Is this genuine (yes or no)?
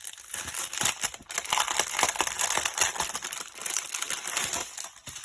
yes